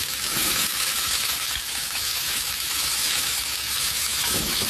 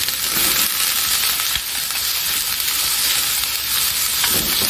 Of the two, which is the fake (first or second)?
first